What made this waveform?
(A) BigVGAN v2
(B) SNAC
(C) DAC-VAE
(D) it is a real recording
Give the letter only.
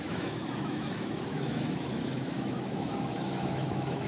C